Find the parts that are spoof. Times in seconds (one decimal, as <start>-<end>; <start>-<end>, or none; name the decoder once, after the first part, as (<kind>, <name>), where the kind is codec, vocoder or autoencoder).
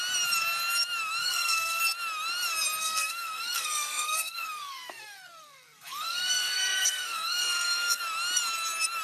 1.2-1.8 (codec, SNAC); 2.8-8.0